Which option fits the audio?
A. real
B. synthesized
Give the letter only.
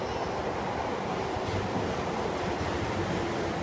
A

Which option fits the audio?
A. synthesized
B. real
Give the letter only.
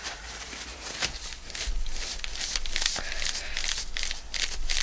B